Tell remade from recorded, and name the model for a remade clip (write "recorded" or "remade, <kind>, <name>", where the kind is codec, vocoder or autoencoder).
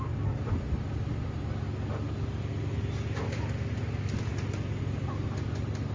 recorded